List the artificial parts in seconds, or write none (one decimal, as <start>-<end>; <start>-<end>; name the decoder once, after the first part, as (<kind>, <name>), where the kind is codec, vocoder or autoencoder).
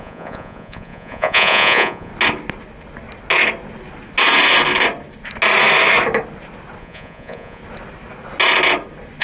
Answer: 0.0-2.1 (vocoder, Vocos); 6.8-7.6